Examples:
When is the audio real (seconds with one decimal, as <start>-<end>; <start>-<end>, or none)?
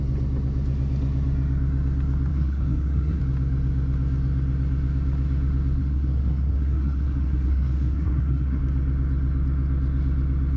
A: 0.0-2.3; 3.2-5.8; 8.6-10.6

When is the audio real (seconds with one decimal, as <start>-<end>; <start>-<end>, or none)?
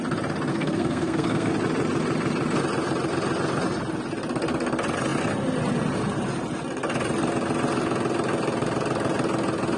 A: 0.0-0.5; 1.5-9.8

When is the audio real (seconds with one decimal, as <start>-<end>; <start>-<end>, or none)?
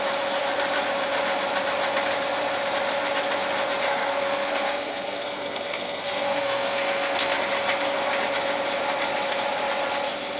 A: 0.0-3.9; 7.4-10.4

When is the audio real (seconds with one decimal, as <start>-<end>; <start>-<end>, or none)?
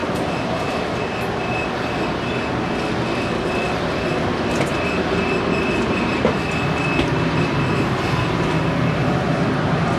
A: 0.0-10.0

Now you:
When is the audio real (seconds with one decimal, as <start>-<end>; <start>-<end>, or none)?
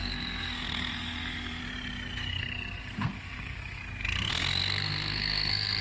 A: 1.6-2.3; 3.8-4.3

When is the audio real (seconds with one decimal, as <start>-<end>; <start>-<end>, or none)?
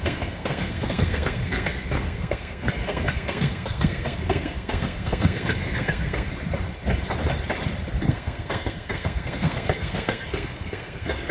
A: 6.3-8.0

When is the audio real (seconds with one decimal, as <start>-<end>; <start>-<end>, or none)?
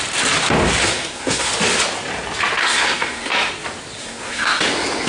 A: 0.0-0.8; 1.5-2.6; 3.3-4.0; 4.6-5.1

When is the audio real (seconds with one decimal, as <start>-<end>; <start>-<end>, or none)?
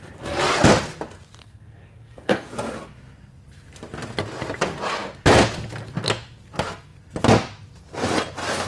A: 0.0-1.4; 2.5-8.7